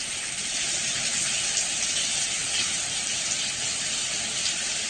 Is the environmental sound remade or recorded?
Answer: remade